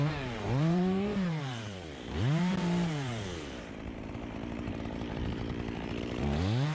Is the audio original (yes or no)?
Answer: no